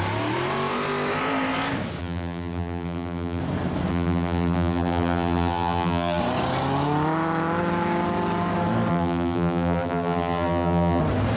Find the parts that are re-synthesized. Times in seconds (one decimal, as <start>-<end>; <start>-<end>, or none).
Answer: 2.0-3.4; 3.9-6.2; 8.9-11.0